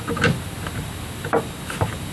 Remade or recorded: recorded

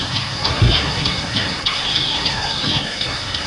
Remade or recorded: remade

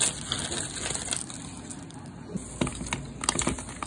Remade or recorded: recorded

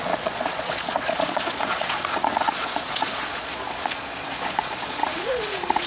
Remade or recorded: remade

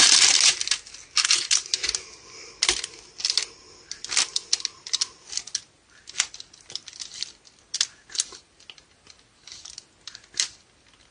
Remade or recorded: recorded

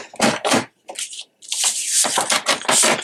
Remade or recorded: recorded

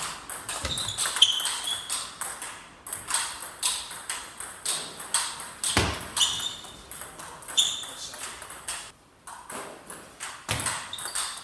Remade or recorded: recorded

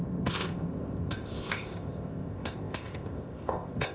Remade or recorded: remade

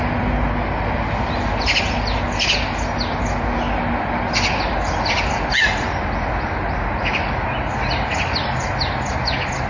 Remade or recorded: recorded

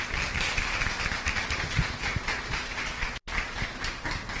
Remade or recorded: recorded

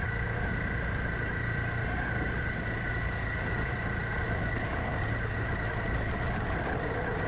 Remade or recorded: recorded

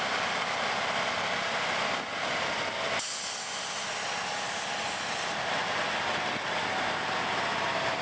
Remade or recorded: recorded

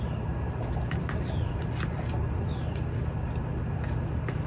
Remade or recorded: recorded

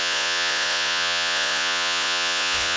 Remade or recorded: remade